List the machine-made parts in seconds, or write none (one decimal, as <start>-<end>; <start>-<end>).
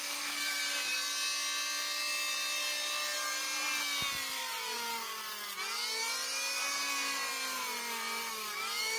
0.0-0.6; 4.4-5.1; 8.3-9.0